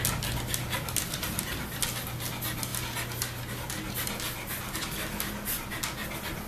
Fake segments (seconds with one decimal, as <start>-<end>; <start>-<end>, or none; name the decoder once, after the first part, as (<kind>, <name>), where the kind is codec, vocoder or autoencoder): none